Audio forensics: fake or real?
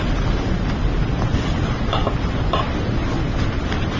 real